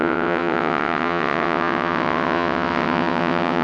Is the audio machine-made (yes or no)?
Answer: yes